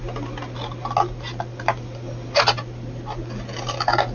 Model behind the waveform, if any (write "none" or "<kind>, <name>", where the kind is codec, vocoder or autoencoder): none